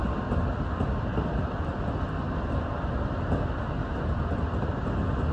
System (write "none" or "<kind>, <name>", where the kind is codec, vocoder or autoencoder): none